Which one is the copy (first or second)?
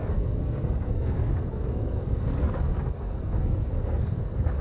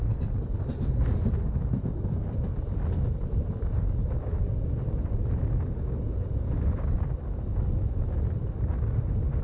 first